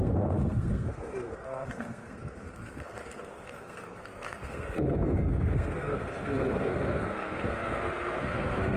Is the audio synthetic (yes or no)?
yes